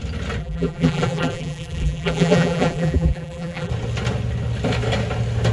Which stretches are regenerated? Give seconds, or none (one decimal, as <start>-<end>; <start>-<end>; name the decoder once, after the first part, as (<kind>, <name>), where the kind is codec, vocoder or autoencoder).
0.4-3.7 (vocoder, BigVGAN v2)